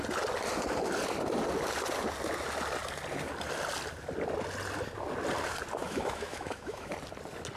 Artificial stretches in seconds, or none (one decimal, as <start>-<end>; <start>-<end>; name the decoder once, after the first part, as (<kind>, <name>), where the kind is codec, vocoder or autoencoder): 5.8-6.9 (autoencoder, DAC-VAE)